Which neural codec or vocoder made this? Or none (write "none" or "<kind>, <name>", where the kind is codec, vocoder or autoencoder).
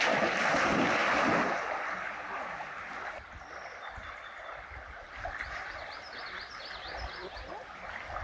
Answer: none